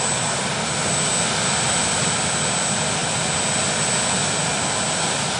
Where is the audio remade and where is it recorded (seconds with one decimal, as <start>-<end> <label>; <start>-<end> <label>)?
0.0-5.4 recorded